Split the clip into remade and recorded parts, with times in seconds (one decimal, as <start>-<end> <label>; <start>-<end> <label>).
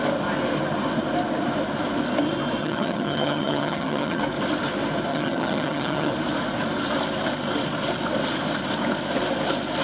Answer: 0.0-2.6 recorded; 2.6-4.2 remade; 4.2-5.1 recorded; 5.1-6.1 remade; 6.1-9.8 recorded